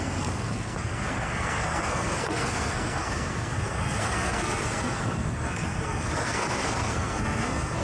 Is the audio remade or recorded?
remade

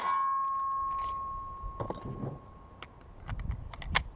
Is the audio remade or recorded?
recorded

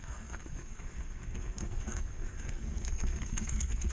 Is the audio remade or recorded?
remade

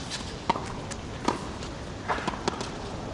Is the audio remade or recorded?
recorded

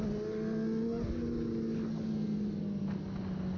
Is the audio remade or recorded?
recorded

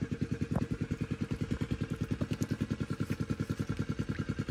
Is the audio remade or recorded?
recorded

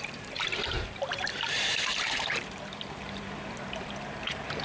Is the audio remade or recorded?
remade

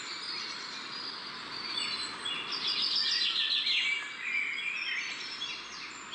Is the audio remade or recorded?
recorded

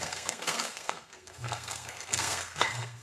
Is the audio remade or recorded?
remade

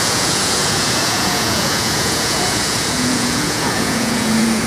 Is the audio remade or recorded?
remade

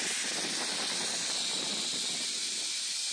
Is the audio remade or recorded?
recorded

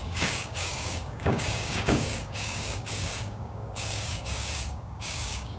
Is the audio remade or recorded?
remade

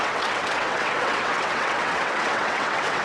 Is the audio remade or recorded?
remade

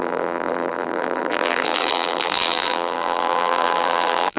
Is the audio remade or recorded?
remade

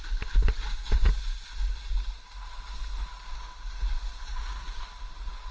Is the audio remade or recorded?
recorded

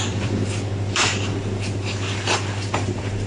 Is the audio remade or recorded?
remade